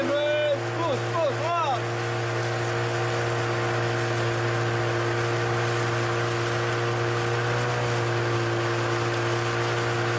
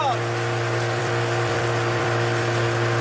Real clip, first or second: first